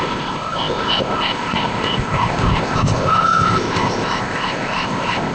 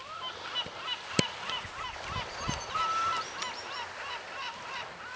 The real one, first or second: second